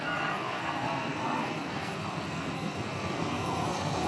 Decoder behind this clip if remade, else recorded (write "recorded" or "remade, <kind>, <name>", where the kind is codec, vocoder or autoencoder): remade, codec, SNAC